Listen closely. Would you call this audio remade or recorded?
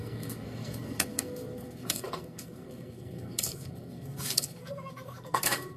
remade